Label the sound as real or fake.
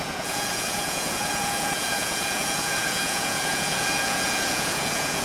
fake